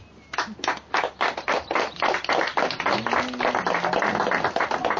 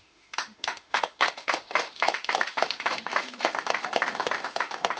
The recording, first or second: first